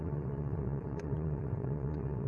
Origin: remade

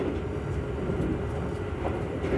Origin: recorded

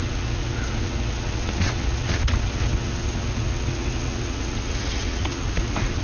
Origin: remade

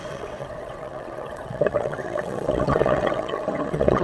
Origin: remade